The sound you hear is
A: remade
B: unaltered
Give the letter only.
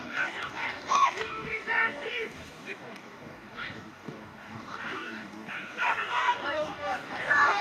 A